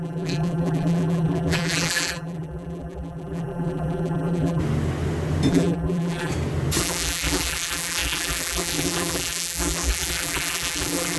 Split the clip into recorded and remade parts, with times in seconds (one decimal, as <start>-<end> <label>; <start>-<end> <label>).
0.0-4.6 remade; 4.6-5.5 recorded; 5.5-6.3 remade; 6.3-6.8 recorded; 6.8-11.2 remade